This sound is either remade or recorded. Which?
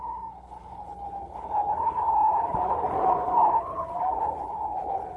remade